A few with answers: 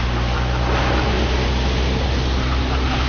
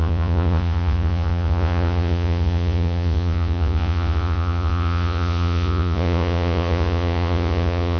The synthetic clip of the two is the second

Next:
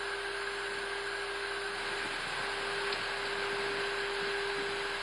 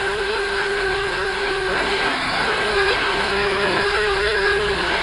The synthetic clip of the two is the second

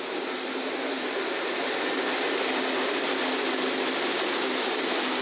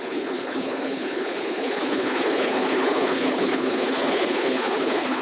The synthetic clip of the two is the second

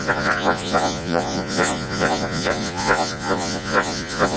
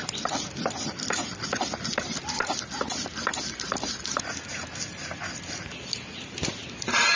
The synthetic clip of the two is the first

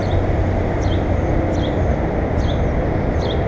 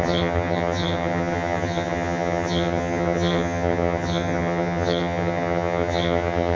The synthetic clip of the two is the second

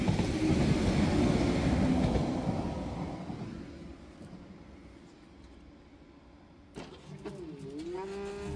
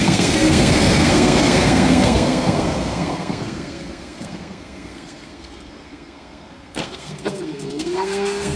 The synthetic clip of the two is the second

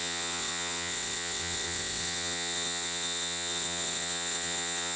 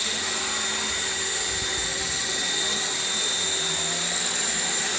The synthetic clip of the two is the first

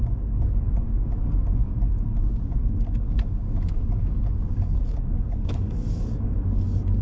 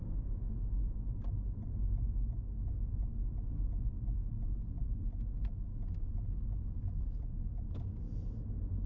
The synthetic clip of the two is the first